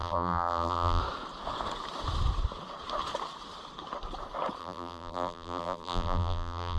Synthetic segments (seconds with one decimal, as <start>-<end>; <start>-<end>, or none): 0.0-1.0; 4.6-6.8